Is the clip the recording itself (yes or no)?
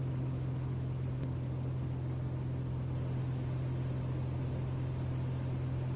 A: yes